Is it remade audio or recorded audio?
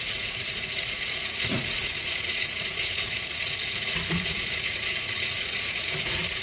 remade